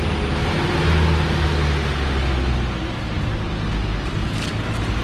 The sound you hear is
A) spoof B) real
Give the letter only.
B